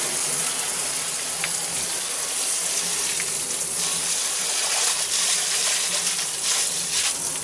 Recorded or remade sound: recorded